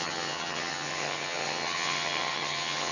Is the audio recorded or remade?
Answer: remade